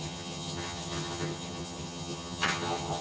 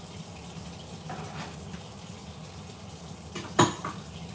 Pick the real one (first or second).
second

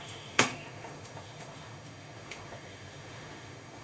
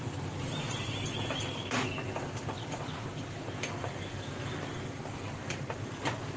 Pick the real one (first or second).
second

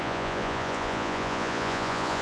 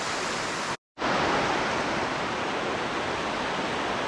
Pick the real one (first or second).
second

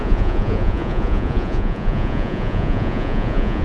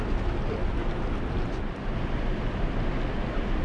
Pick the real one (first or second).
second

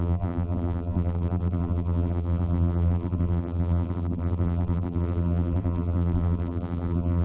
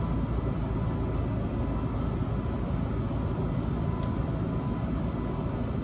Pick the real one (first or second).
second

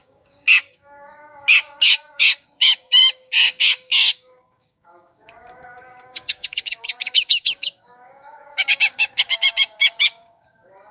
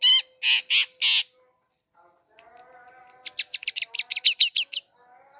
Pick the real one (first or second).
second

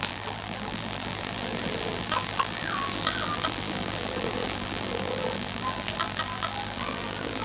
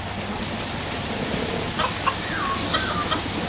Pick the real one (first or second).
second